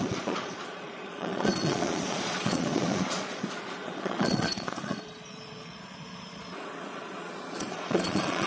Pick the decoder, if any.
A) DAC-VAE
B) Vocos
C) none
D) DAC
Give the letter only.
B